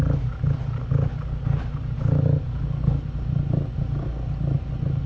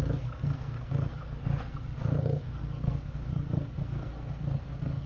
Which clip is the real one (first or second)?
first